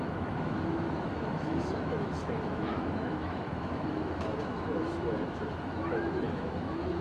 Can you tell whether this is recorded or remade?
remade